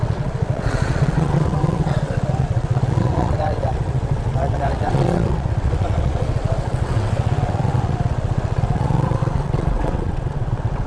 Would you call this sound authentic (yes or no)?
no